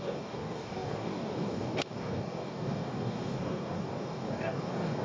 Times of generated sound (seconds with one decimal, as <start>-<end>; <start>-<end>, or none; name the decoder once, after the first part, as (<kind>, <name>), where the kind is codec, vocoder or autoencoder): 0.0-5.0 (codec, DAC)